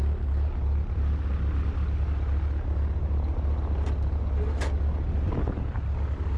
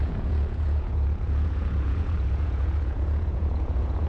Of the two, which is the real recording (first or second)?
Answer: first